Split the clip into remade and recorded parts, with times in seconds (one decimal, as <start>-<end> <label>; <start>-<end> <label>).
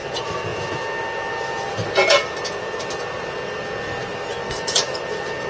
0.0-5.5 recorded